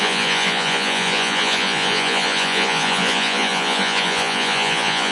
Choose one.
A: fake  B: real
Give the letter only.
A